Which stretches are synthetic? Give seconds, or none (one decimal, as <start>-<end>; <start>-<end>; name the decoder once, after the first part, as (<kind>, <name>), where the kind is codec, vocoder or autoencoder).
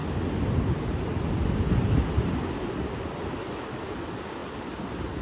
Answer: none